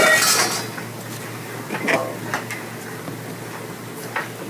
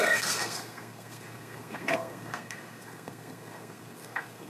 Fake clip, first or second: second